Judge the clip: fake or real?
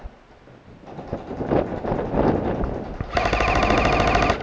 real